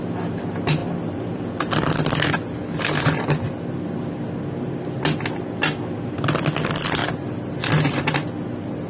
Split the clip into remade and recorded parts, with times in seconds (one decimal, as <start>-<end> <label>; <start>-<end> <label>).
0.0-8.9 recorded